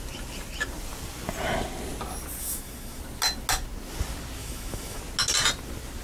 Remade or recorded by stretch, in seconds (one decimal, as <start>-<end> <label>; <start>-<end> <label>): 0.0-2.4 recorded; 2.4-3.0 remade; 3.0-4.4 recorded; 4.4-5.0 remade; 5.0-6.0 recorded